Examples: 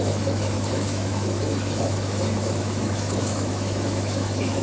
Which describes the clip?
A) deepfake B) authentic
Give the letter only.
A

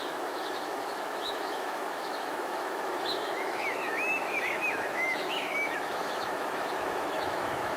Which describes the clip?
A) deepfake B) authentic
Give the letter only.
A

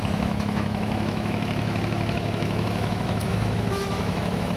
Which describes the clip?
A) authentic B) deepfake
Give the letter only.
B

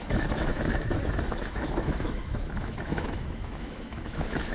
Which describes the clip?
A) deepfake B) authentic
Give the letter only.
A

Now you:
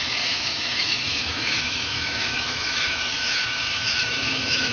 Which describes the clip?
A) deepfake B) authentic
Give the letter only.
A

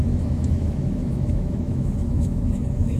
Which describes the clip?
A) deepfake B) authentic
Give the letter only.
A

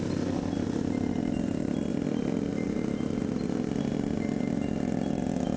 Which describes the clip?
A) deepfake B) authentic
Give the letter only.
B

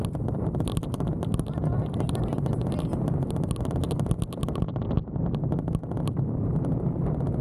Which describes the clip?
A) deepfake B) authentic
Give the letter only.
B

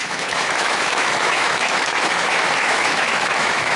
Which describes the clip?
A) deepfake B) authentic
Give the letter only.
A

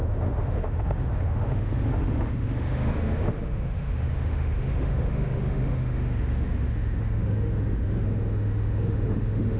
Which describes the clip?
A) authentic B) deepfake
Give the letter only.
B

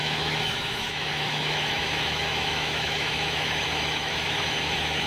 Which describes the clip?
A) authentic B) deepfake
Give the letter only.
B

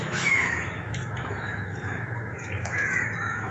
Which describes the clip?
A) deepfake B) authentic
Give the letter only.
A